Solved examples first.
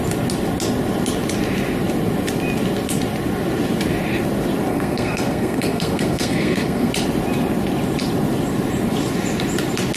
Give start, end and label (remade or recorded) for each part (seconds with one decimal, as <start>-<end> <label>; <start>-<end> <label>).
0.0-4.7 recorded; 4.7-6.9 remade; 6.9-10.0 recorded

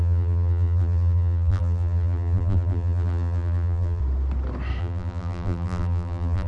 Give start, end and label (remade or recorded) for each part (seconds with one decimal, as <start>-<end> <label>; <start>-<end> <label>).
0.0-4.0 remade; 4.0-4.8 recorded; 4.8-6.5 remade

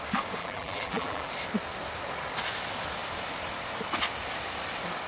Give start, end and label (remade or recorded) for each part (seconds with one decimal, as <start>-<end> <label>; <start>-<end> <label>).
0.0-0.4 recorded; 0.4-1.3 remade; 1.3-5.1 recorded

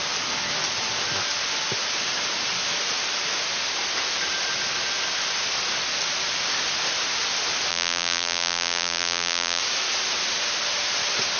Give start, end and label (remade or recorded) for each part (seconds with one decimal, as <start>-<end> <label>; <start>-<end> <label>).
0.0-7.7 recorded; 7.7-9.6 remade; 9.6-11.4 recorded